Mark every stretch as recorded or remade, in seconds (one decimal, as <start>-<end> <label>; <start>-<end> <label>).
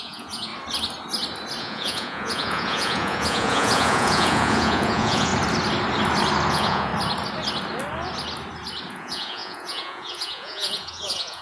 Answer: 0.0-0.5 remade; 0.5-1.6 recorded; 1.6-5.3 remade; 5.3-6.5 recorded; 6.5-6.9 remade; 6.9-8.9 recorded; 8.9-11.4 remade